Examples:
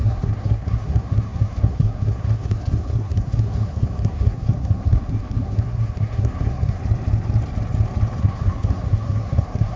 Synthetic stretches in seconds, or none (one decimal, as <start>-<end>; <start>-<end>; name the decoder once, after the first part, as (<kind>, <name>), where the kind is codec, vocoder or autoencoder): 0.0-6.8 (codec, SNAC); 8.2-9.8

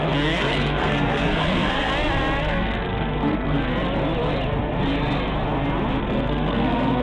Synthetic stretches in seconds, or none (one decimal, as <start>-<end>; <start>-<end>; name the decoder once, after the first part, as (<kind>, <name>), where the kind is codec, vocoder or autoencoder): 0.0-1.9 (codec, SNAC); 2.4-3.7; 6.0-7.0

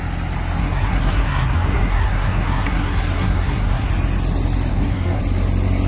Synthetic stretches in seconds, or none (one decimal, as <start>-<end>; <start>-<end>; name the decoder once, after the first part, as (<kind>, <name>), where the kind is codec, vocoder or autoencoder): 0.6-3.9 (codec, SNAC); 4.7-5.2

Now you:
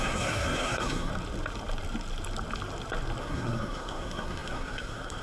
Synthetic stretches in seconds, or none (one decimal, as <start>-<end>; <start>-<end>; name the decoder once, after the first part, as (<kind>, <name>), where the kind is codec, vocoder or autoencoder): 0.0-1.1 (codec, SNAC); 3.2-5.2